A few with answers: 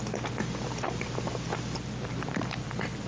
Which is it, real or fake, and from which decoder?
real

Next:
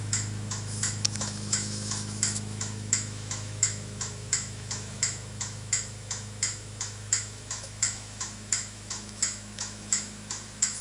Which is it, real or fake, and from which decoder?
fake, autoencoder, DAC-VAE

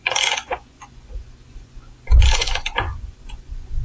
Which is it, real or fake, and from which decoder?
fake, vocoder, Vocos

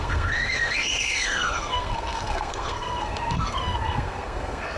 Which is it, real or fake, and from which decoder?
fake, codec, SNAC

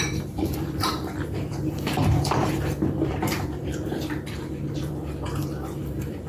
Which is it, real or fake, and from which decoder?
fake, vocoder, BigVGAN v2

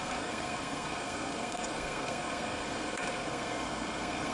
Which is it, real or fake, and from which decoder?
fake, codec, SNAC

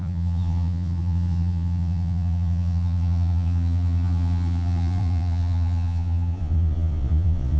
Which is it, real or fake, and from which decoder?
fake, vocoder, Vocos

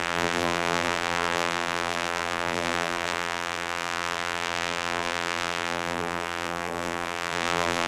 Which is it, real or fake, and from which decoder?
fake, vocoder, BigVGAN v2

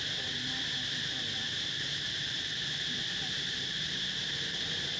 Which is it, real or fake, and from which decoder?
fake, vocoder, BigVGAN v2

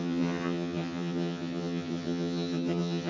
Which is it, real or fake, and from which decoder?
fake, vocoder, HiFi-GAN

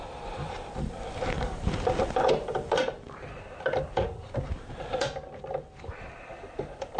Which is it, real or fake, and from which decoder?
fake, vocoder, BigVGAN v2